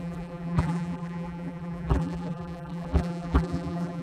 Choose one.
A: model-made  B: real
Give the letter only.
A